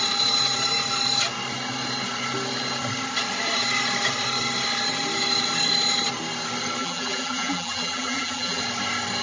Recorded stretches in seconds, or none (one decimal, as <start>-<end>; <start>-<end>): 0.0-6.8; 8.6-9.2